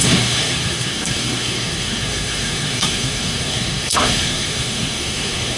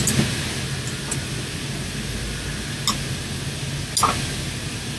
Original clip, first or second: second